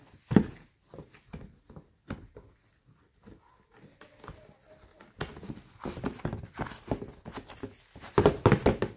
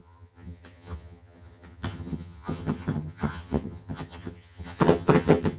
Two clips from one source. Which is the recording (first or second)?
first